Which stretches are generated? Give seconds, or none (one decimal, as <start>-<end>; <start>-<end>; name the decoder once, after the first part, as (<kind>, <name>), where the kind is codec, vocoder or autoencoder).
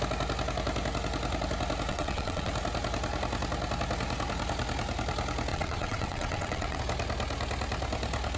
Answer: 1.9-2.5 (vocoder, WaveNeXt); 5.5-6.8